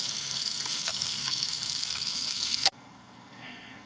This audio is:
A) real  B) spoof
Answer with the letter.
B